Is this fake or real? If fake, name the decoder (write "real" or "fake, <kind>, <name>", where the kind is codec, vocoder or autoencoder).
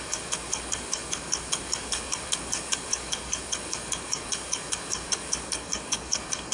fake, codec, DAC